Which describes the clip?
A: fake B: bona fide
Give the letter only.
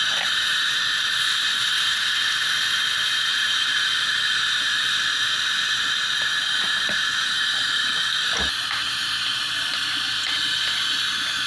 B